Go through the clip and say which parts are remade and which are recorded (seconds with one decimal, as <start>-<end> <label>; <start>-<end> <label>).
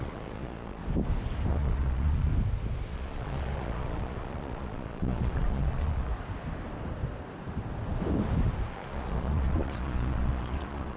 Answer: 0.0-0.8 remade; 0.8-1.5 recorded; 1.5-2.3 remade; 2.3-2.9 recorded; 2.9-6.1 remade; 6.1-8.7 recorded; 8.7-11.0 remade